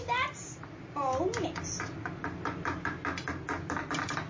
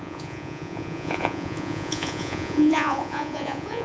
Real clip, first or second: first